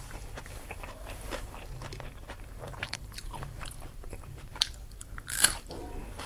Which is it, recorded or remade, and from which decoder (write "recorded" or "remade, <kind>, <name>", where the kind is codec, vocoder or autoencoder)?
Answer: remade, vocoder, BigVGAN v2